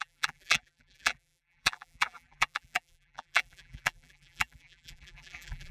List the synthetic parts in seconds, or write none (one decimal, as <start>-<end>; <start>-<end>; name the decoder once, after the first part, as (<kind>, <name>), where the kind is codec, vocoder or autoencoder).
0.0-5.7 (vocoder, BigVGAN v2)